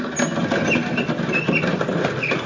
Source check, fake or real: real